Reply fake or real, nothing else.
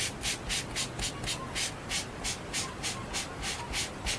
real